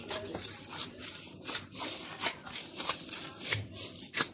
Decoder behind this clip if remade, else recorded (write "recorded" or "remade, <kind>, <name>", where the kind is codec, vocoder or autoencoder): remade, vocoder, BigVGAN v2